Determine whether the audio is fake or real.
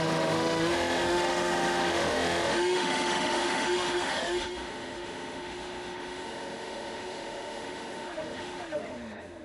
fake